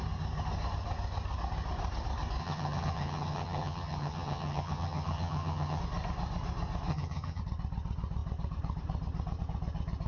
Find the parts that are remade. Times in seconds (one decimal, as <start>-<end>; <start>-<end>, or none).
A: 2.4-5.8; 6.9-7.4